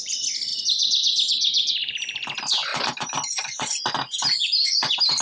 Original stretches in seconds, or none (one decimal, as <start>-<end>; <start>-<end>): 0.0-5.2